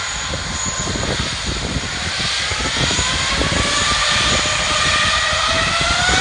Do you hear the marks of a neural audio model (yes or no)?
no